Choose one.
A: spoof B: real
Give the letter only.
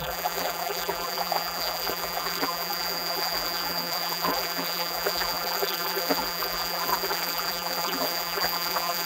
A